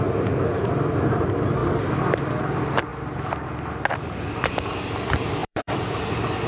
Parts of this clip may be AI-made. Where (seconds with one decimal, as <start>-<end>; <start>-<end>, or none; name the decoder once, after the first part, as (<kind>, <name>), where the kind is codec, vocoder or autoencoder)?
5.4-6.0 (vocoder, BigVGAN v2)